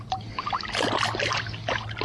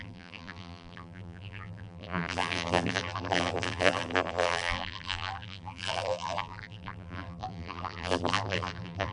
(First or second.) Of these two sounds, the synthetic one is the second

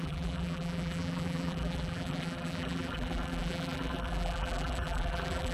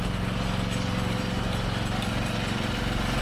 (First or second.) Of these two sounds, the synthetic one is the first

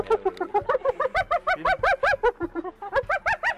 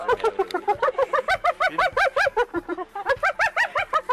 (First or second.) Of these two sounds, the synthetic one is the second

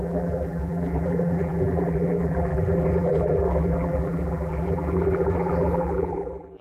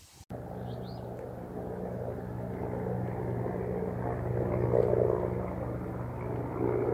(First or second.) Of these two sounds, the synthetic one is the first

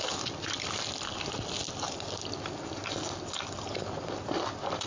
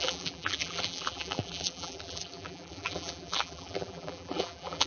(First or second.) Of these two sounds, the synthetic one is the second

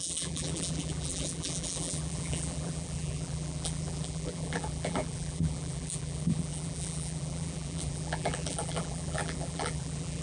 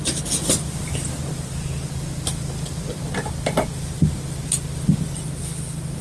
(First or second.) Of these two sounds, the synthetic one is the first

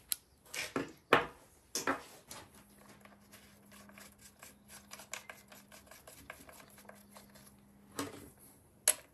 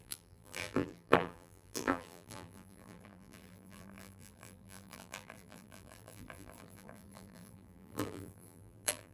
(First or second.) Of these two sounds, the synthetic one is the second